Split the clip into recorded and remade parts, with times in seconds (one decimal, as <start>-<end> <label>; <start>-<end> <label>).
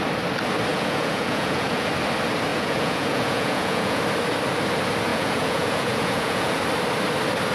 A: 0.0-0.7 recorded; 0.7-1.9 remade; 1.9-2.5 recorded; 2.5-4.0 remade; 4.0-5.1 recorded; 5.1-6.6 remade; 6.6-7.5 recorded